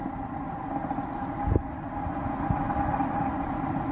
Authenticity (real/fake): real